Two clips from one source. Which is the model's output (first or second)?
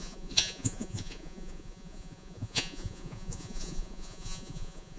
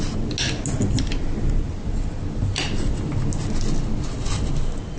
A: first